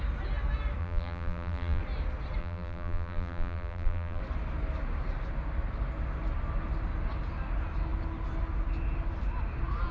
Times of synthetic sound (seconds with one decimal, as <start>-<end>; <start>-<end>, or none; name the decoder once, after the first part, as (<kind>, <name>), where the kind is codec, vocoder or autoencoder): 0.8-1.8 (vocoder, BigVGAN v2); 2.4-4.2